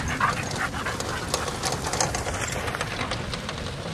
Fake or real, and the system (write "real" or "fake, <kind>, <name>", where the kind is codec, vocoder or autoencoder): real